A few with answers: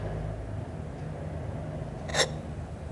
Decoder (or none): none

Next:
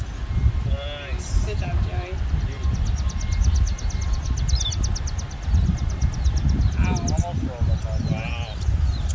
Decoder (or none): none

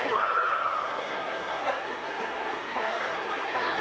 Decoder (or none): codec, SNAC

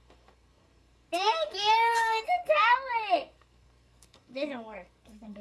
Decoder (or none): codec, SNAC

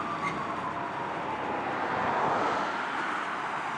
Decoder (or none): none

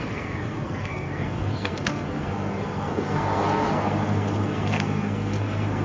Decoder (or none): codec, SNAC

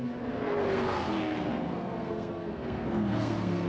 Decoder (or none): codec, SNAC